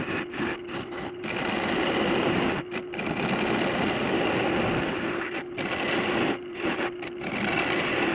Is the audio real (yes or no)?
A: yes